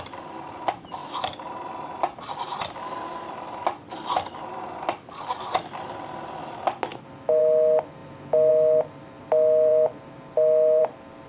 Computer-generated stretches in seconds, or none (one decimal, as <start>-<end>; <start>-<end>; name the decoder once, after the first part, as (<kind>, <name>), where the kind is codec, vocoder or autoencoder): none